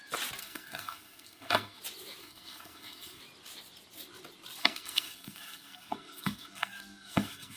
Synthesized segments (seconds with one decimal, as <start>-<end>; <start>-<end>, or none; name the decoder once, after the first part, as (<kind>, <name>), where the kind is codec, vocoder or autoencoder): 0.4-1.8 (codec, SNAC); 2.2-3.2; 4.6-7.6